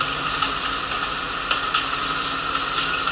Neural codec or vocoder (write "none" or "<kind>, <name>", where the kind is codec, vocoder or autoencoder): none